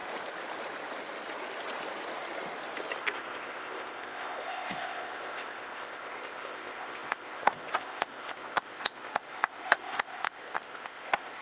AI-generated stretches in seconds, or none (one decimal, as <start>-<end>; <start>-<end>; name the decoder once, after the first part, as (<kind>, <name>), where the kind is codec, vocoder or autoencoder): 3.0-11.4 (codec, ZipCodec)

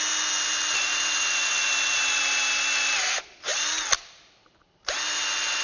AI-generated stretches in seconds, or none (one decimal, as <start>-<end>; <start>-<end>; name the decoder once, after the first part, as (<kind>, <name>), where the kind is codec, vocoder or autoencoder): none

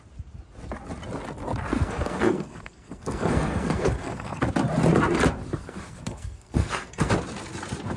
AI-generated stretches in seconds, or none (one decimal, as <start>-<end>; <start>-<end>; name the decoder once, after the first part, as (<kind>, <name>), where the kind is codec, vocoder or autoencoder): 1.7-4.4 (codec, SNAC); 5.5-7.1

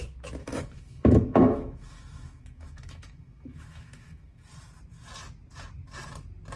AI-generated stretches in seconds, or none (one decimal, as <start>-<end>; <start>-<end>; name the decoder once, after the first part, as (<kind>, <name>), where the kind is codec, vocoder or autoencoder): 0.4-4.4 (autoencoder, DAC-VAE)

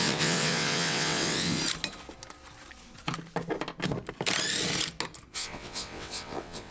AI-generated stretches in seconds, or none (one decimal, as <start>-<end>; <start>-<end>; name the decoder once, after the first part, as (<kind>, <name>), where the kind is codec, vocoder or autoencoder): 0.0-1.6 (vocoder, WaveNeXt); 5.3-6.7

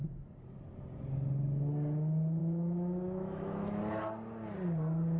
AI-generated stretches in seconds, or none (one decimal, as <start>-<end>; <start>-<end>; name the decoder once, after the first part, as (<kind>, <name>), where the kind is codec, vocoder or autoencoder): 2.4-3.8 (autoencoder, DAC-VAE)